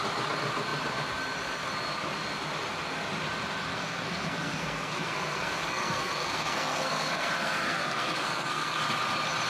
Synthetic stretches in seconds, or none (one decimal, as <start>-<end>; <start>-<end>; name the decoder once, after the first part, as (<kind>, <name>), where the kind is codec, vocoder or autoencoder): 3.7-8.8 (codec, SNAC)